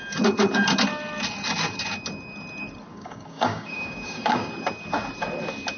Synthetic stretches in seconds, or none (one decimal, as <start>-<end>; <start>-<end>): 2.9-4.5